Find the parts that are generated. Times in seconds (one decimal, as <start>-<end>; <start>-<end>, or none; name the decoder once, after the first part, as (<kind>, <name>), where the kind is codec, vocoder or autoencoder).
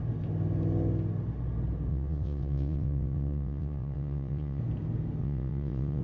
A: 1.9-4.6 (vocoder, WaveNeXt); 5.2-6.0